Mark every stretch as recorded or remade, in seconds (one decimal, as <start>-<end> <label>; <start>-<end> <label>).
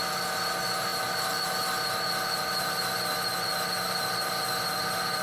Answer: 0.0-5.2 recorded